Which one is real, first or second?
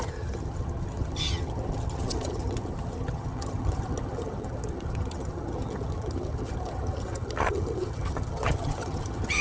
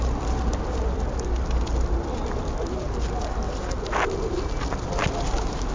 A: second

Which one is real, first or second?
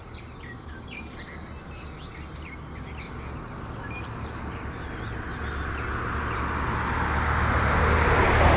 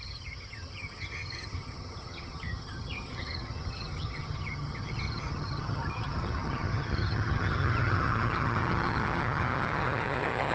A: first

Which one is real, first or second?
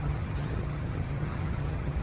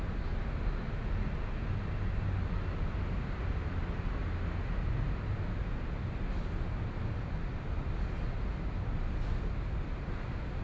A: second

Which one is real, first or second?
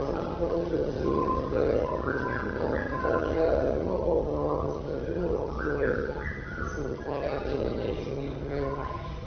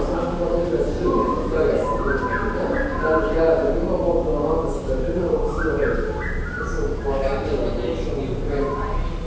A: second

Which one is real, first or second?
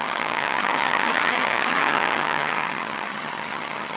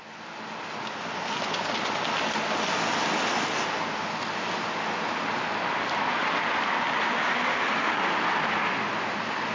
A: second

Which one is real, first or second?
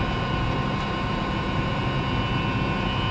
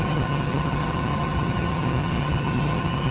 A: first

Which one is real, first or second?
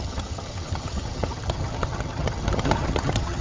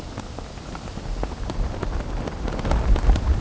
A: second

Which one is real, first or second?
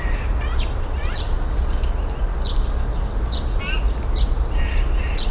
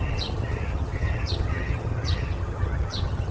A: first